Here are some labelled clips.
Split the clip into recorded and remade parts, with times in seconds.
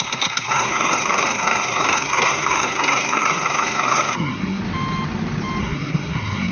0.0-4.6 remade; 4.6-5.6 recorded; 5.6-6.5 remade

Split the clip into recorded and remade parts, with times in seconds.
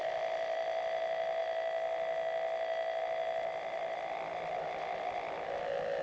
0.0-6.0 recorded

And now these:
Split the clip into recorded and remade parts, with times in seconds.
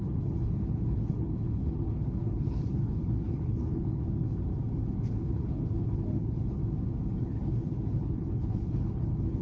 0.0-4.5 remade; 4.5-5.1 recorded; 5.1-6.6 remade; 6.6-7.2 recorded; 7.2-9.4 remade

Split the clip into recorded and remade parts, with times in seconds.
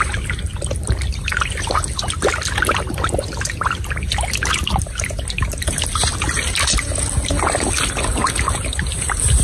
0.0-9.4 recorded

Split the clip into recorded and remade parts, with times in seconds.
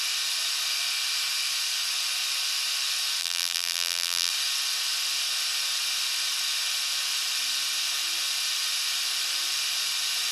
0.0-3.2 recorded; 3.2-4.3 remade; 4.3-10.3 recorded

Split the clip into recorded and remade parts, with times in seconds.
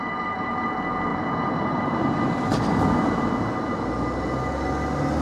0.0-1.1 recorded; 1.1-3.3 remade; 3.3-5.2 recorded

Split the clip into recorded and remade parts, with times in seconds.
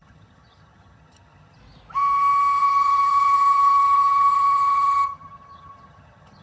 0.0-1.6 remade; 1.6-2.6 recorded; 2.6-6.4 remade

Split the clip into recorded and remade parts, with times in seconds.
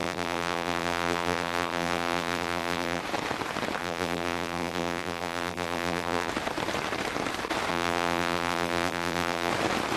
0.0-3.0 remade; 3.0-3.8 recorded; 3.8-6.3 remade; 6.3-7.7 recorded; 7.7-9.5 remade; 9.5-10.0 recorded